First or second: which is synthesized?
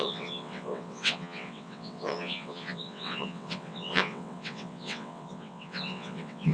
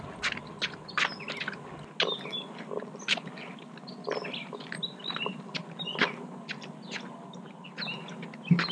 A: first